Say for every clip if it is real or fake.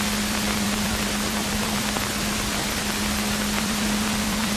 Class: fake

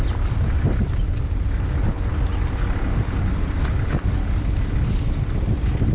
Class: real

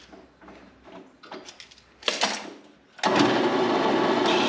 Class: real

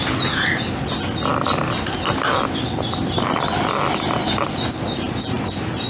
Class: real